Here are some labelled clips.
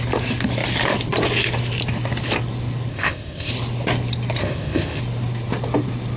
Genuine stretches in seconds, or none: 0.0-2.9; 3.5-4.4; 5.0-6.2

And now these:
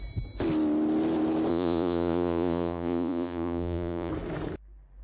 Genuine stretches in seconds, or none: 0.0-1.5; 4.1-5.0

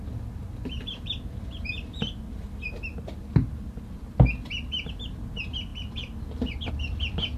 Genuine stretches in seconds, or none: 0.0-5.7; 6.7-7.4

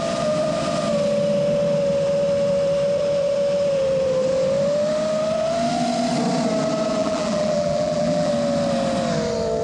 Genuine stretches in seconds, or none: 0.0-7.0; 8.3-9.6

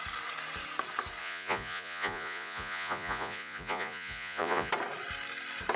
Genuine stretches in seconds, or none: 0.0-1.2; 4.7-5.8

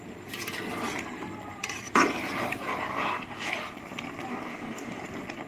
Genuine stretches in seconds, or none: 0.0-2.9; 3.5-4.3; 5.0-5.5